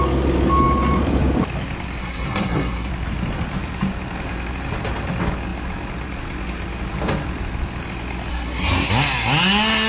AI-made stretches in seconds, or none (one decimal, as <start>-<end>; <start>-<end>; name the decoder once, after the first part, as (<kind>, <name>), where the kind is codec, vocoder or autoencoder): 2.0-2.9 (codec, SNAC); 8.3-8.9